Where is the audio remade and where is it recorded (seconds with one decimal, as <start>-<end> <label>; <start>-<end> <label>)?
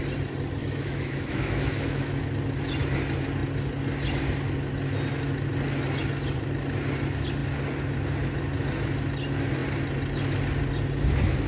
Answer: 0.0-0.6 recorded; 0.6-2.2 remade; 2.2-11.5 recorded